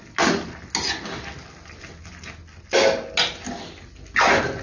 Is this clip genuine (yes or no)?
yes